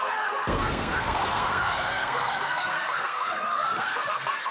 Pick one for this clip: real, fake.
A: fake